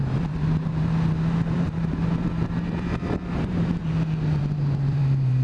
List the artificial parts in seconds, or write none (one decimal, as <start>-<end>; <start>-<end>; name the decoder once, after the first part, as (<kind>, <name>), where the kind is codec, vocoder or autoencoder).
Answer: 0.0-3.8 (vocoder, BigVGAN v2); 4.4-5.4